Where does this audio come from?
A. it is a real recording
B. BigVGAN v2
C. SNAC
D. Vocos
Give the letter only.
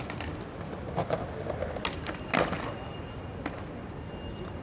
A